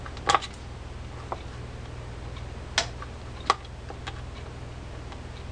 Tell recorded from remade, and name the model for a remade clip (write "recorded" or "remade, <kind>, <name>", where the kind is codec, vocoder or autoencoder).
recorded